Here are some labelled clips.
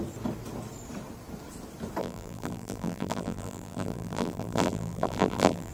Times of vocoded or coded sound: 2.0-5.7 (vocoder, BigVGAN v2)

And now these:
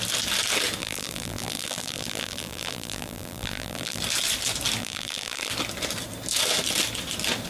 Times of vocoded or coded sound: 0.8-4.0 (vocoder, BigVGAN v2); 4.8-5.5

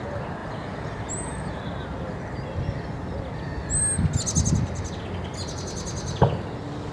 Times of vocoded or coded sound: 0.4-1.6 (vocoder, BigVGAN v2)

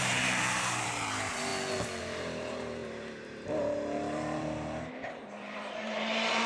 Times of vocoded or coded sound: 0.0-1.5 (vocoder, BigVGAN v2); 2.0-6.5

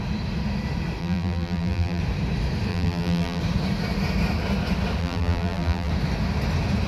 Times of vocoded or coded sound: 1.0-2.0 (vocoder, BigVGAN v2); 2.7-3.4; 5.0-5.9

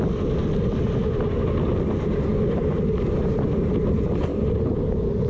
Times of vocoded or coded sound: 4.3-5.3 (vocoder, BigVGAN v2)

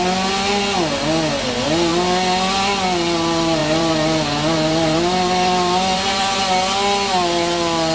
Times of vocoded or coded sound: 3.6-6.4 (vocoder, BigVGAN v2)